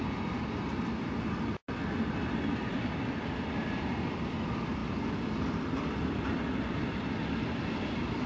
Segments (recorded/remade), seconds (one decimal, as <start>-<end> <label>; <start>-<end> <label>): 0.0-8.3 recorded